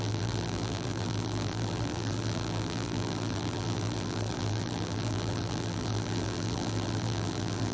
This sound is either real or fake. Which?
fake